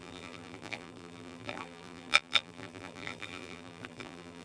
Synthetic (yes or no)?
yes